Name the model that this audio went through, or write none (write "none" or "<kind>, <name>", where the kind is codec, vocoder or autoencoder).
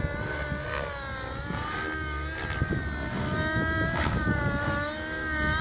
none